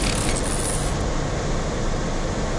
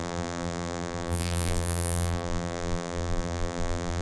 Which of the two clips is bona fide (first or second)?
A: first